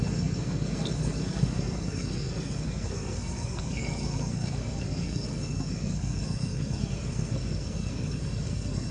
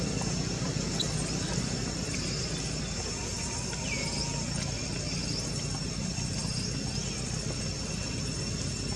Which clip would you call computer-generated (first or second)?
first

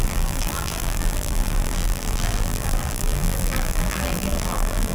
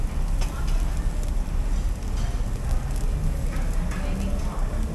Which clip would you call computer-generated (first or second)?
first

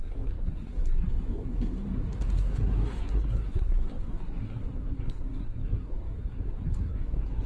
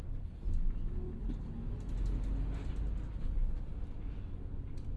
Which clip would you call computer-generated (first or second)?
first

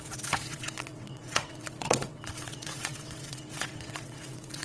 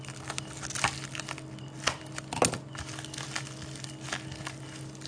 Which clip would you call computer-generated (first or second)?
first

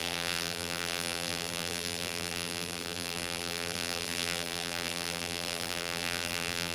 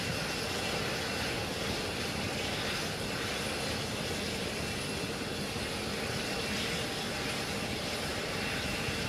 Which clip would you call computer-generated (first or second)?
first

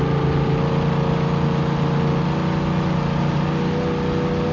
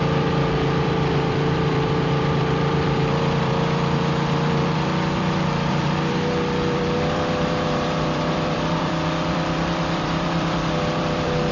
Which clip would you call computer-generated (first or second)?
second